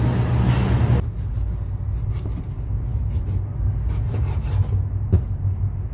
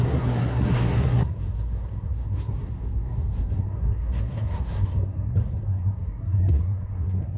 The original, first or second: first